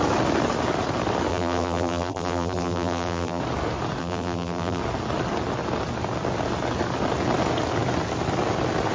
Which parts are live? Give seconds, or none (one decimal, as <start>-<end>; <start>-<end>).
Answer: 0.0-1.3; 3.4-4.0; 4.8-8.9